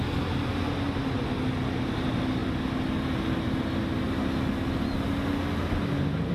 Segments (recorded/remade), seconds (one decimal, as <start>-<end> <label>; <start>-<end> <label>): 0.0-6.3 recorded